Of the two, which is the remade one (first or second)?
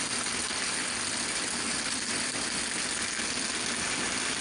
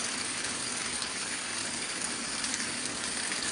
second